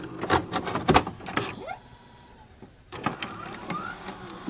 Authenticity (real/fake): real